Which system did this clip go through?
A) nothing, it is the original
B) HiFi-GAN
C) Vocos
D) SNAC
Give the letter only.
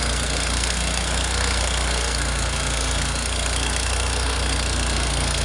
D